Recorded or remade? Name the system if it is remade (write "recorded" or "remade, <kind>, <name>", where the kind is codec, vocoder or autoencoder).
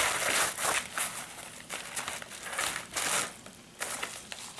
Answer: recorded